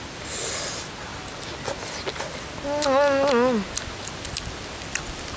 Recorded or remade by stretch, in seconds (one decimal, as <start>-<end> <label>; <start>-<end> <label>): 0.0-5.4 recorded